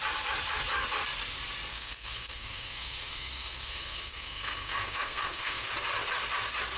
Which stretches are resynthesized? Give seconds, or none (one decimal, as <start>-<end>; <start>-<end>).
1.7-5.7

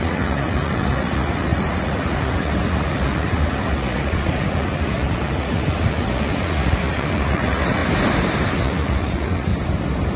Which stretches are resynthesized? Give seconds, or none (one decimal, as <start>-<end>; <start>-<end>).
0.0-7.8; 8.5-9.5

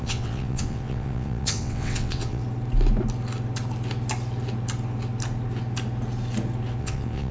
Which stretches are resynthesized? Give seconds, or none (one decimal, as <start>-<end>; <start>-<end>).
0.0-2.4; 6.8-7.3

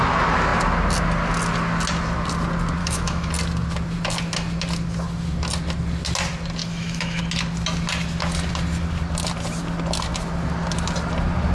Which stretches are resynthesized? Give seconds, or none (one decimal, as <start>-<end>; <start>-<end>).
2.8-3.3; 6.6-7.2

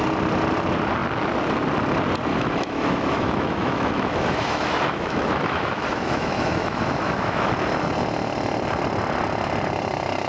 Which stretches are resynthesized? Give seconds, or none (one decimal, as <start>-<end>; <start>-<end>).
2.3-7.5